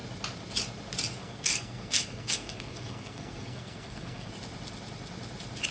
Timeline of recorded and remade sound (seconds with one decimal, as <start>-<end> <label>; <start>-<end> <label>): 0.0-1.2 recorded; 1.2-4.3 remade; 4.3-5.7 recorded